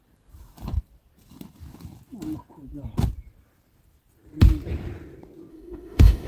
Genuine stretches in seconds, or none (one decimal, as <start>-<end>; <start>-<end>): 0.0-5.5